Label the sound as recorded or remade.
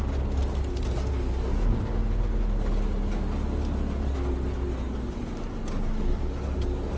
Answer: recorded